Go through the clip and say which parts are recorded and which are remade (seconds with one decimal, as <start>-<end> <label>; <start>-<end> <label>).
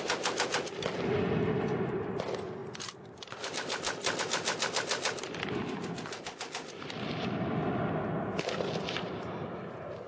0.0-10.1 recorded